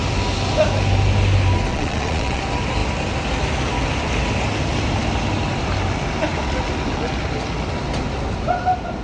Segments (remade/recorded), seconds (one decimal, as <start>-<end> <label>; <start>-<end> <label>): 0.0-1.7 recorded; 1.7-2.4 remade; 2.4-9.0 recorded